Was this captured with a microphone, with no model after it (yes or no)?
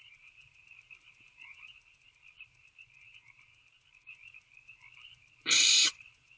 no